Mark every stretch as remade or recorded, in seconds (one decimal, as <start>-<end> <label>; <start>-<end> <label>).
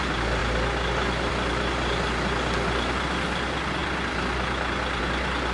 0.0-5.5 recorded